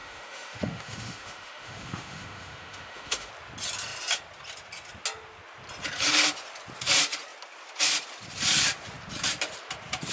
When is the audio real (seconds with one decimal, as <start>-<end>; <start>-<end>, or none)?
3.3-10.1